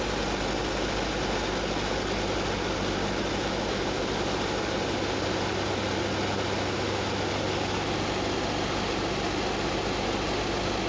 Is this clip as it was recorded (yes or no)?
yes